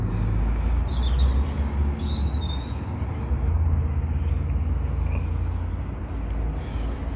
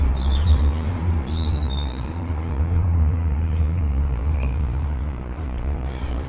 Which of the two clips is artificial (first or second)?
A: second